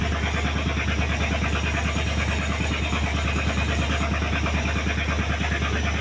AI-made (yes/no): no